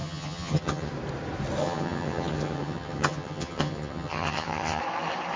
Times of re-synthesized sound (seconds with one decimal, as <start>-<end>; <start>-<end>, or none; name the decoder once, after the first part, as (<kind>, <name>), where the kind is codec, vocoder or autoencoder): 0.0-0.9 (vocoder, HiFi-GAN); 1.6-4.8